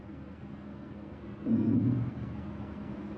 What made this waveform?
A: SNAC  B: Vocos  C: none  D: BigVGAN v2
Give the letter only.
A